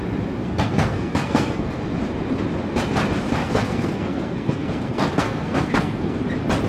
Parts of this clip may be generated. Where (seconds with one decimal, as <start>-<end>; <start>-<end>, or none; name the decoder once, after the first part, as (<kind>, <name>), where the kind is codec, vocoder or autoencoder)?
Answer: 0.4-1.8 (codec, SNAC); 3.4-6.2